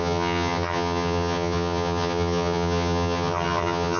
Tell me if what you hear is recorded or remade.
remade